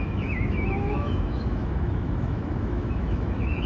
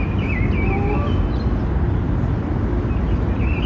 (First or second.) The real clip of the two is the second